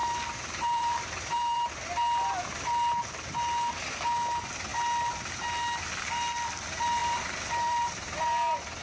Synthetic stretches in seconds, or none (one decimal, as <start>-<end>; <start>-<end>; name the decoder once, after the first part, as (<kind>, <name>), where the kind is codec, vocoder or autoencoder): 0.0-1.7 (vocoder, BigVGAN v2); 7.0-8.8